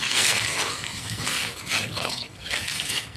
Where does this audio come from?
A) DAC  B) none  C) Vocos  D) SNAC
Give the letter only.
D